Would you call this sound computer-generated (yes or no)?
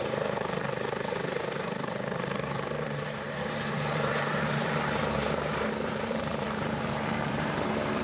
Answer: yes